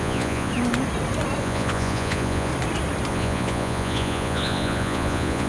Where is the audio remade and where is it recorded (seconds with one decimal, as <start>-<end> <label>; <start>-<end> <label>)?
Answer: 0.0-0.5 remade; 0.5-1.4 recorded; 1.4-2.5 remade; 2.5-3.1 recorded; 3.1-5.5 remade

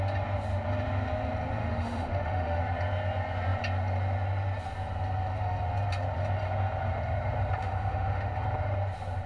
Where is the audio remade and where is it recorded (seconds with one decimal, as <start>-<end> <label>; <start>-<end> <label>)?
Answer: 0.0-1.6 recorded; 1.6-2.6 remade; 2.6-7.6 recorded; 7.6-8.3 remade; 8.3-9.3 recorded